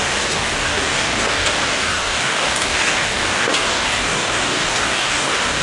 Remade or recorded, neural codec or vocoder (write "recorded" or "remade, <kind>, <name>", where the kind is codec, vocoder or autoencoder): remade, codec, DAC